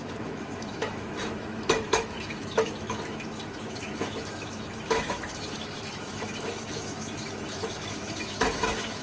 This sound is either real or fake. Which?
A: fake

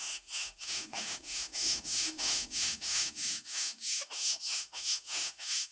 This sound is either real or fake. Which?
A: fake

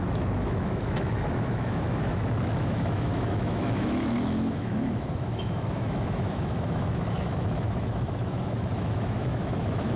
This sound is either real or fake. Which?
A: fake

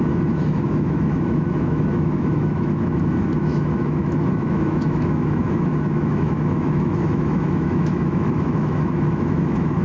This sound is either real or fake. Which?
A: fake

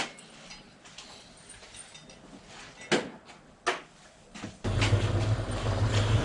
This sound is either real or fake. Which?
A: real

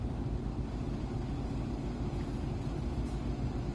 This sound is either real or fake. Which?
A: real